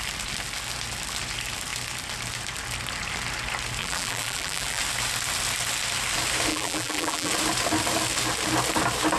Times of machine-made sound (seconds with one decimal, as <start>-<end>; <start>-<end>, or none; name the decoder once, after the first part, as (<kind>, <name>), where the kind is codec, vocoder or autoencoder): 3.8-4.8 (vocoder, BigVGAN v2); 6.5-7.3